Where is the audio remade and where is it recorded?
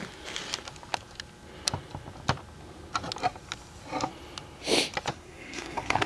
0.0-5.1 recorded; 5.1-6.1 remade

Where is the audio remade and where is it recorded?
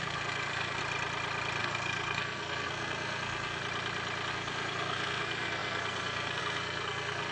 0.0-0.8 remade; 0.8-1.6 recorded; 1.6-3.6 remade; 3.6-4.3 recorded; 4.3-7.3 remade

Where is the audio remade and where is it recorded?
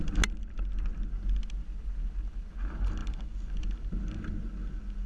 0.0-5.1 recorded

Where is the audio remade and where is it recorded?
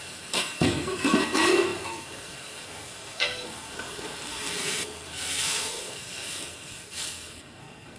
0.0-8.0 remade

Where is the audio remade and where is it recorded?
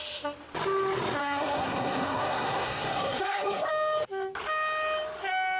0.0-1.2 recorded; 1.2-3.7 remade; 3.7-5.6 recorded